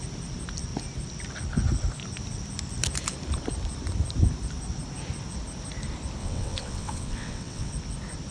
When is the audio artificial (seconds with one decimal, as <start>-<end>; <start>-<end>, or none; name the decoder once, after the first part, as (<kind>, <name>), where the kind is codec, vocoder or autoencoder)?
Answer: 6.2-7.7 (vocoder, WaveNeXt)